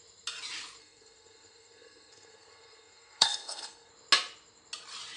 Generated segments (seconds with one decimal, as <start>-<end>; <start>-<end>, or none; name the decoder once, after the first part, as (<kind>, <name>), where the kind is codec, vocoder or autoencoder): 0.8-3.9 (codec, SNAC)